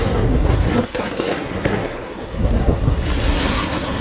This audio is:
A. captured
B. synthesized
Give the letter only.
B